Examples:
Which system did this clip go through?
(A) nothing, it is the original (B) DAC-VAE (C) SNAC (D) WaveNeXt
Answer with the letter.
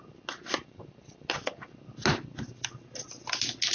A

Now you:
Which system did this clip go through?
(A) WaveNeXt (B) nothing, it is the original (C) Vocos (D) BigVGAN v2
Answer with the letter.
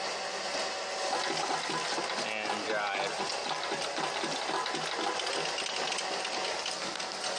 B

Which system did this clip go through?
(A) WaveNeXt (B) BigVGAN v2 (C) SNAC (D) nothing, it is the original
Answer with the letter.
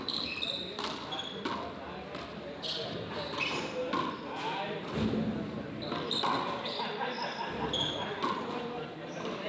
D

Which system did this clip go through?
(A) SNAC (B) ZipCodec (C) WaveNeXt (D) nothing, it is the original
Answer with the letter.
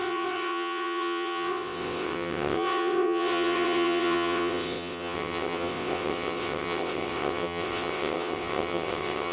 C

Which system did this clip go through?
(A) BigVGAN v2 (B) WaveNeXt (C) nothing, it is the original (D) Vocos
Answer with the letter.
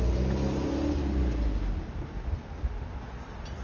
C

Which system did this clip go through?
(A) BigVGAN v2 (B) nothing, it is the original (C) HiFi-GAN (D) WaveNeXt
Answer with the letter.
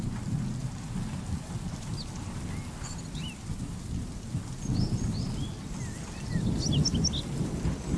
B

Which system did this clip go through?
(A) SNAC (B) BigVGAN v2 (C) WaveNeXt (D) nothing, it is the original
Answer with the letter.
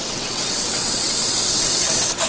C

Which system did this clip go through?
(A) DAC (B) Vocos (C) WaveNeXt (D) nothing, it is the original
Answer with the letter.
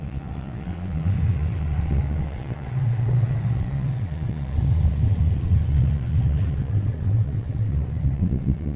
C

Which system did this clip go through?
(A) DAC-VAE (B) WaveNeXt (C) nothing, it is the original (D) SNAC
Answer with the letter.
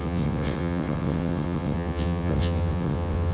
B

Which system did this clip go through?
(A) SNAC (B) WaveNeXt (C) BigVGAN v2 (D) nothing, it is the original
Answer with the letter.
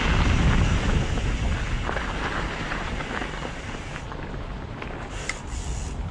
D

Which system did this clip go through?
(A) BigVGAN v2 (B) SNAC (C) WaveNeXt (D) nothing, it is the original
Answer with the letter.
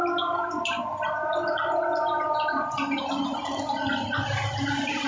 D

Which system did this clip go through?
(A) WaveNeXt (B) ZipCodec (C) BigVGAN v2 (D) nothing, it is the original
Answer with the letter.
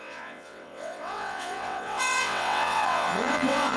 A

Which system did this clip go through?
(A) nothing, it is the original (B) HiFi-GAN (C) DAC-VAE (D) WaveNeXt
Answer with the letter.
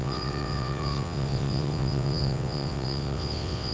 D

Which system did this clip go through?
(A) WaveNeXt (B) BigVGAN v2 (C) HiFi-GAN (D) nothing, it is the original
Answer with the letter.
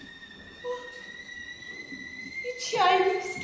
D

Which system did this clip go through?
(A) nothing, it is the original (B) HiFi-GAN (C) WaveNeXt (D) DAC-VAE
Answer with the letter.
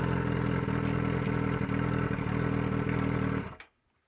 A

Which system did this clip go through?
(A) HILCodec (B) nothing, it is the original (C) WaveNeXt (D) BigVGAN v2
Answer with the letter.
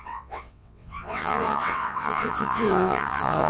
C